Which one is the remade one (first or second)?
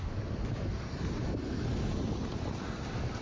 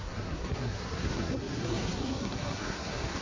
second